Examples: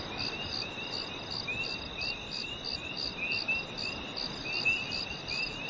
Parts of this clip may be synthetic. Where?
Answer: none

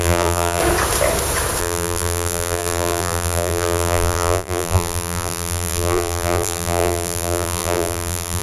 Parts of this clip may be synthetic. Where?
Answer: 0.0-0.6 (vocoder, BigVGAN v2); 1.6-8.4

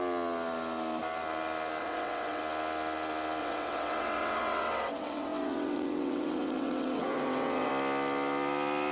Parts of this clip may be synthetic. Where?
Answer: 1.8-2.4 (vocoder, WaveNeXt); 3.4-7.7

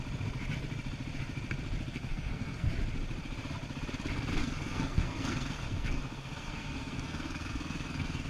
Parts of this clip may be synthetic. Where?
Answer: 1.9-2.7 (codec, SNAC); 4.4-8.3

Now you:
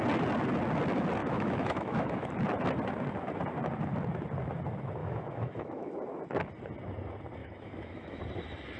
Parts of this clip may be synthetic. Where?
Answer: 1.2-2.3 (autoencoder, DAC-VAE); 5.0-5.9; 7.4-8.2

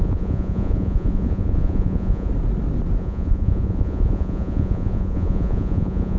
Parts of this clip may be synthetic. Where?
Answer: 0.0-2.3 (vocoder, Vocos); 3.0-6.2